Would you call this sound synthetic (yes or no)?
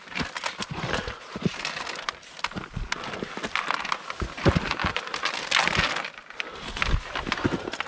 no